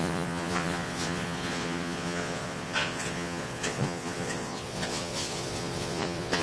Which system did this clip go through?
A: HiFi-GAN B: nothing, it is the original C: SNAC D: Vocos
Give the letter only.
D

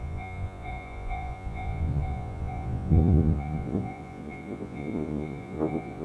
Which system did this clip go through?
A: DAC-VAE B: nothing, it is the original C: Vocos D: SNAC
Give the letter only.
C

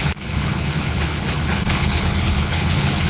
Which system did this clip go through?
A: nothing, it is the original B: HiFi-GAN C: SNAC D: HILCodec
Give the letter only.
D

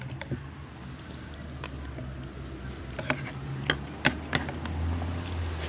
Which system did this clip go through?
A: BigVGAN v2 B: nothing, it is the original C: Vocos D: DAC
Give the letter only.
B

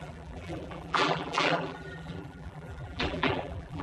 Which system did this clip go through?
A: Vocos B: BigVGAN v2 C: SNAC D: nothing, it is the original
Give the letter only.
B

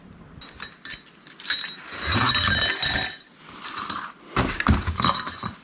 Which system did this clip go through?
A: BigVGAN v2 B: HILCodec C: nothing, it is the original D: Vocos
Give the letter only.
C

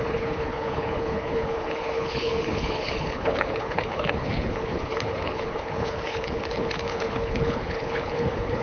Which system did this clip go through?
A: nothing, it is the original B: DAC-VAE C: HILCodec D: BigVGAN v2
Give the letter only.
C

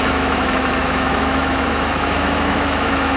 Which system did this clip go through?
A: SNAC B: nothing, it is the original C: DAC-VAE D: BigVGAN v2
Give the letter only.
C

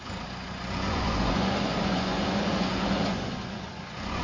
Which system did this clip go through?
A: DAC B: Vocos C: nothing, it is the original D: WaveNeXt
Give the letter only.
B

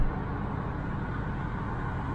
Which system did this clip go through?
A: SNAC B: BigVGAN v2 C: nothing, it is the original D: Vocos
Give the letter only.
C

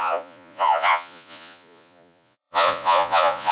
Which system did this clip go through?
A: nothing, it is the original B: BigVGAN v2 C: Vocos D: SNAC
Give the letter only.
C